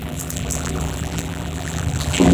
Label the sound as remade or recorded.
remade